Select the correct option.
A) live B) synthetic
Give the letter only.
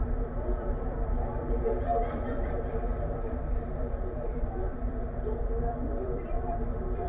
B